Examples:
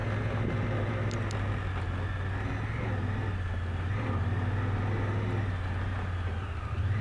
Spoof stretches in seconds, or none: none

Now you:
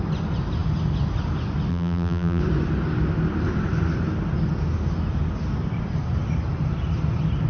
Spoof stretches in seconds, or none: 1.7-2.4 (vocoder, BigVGAN v2)

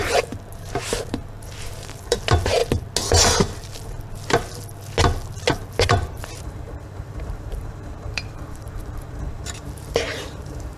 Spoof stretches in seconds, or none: 0.0-2.6 (vocoder, BigVGAN v2); 5.5-10.8

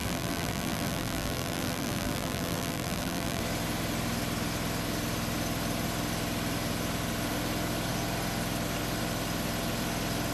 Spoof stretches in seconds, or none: 0.0-3.4 (vocoder, BigVGAN v2)

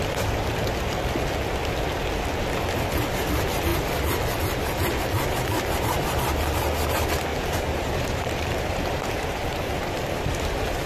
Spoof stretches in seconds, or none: 7.3-10.9 (vocoder, BigVGAN v2)

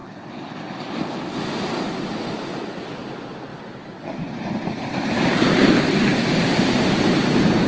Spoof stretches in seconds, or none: 3.5-7.7 (vocoder, BigVGAN v2)

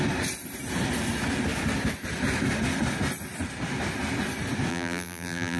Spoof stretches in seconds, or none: 4.7-5.6 (vocoder, BigVGAN v2)

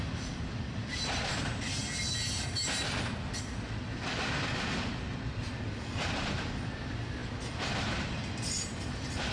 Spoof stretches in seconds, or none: 0.0-1.8 (vocoder, BigVGAN v2); 5.6-9.3